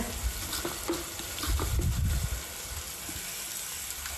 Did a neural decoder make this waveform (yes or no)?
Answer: no